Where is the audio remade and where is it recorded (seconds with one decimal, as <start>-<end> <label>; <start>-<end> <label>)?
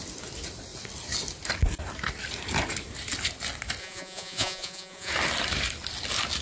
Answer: 0.0-3.8 recorded; 3.8-5.1 remade; 5.1-6.4 recorded